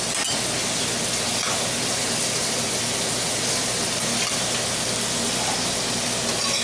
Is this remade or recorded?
recorded